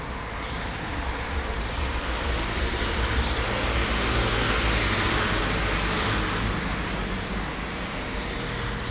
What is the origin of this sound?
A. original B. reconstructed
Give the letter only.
A